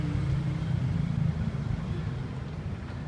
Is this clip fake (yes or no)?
no